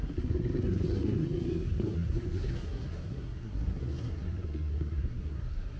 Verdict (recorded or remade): remade